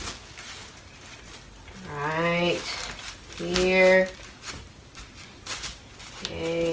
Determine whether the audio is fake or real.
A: real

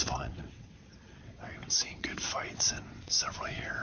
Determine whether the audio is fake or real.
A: fake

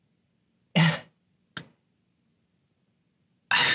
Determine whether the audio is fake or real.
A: real